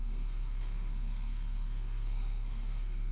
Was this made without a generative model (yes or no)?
no